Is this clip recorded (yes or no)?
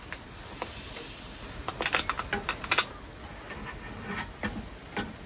yes